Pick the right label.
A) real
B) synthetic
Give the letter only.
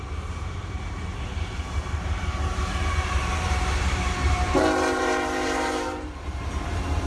B